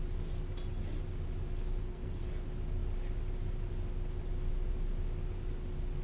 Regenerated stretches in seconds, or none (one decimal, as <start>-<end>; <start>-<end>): 1.8-2.3